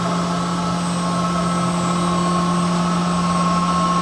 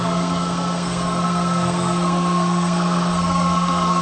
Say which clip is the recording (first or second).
first